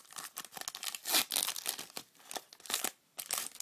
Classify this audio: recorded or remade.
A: recorded